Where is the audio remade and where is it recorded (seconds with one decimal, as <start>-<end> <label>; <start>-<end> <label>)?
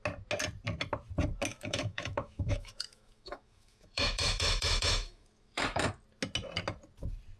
0.0-1.5 recorded; 1.5-5.9 remade; 5.9-7.4 recorded